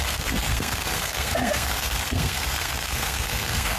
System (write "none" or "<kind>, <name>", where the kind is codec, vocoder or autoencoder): codec, SNAC